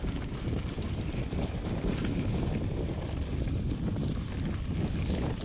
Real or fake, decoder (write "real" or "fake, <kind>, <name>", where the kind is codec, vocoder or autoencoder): fake, vocoder, BigVGAN v2